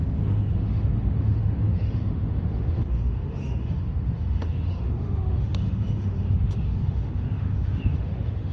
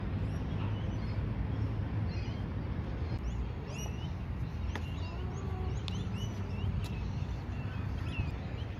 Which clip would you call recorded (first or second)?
second